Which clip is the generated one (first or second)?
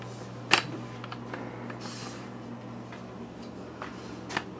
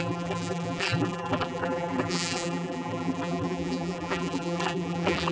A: second